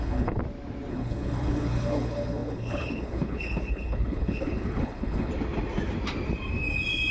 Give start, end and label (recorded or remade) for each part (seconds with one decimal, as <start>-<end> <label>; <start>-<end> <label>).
0.0-0.4 remade; 0.4-0.9 recorded; 0.9-5.3 remade; 5.3-7.1 recorded